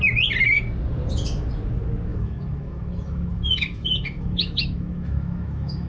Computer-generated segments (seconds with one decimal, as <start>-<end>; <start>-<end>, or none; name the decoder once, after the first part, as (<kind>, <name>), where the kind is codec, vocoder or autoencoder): 2.1-5.9 (autoencoder, DAC-VAE)